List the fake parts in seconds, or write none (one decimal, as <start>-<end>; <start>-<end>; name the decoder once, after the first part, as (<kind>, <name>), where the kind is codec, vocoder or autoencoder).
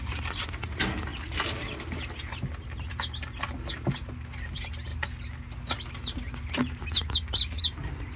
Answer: none